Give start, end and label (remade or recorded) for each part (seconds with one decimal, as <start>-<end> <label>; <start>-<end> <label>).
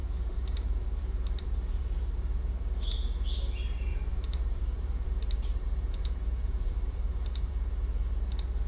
0.0-2.4 remade; 2.4-3.9 recorded; 3.9-7.5 remade; 7.5-8.7 recorded